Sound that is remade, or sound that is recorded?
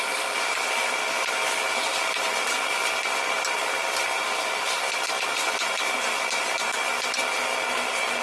recorded